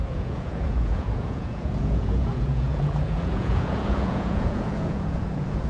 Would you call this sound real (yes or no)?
no